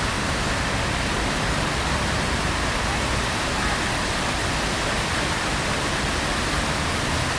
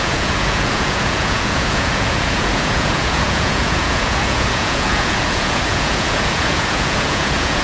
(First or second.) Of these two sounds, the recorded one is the first